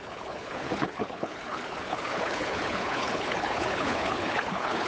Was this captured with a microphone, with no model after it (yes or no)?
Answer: no